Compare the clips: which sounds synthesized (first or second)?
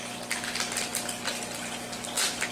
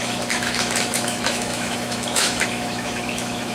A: second